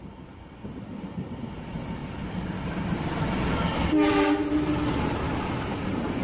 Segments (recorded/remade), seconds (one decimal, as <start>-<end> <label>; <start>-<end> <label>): 0.0-6.2 recorded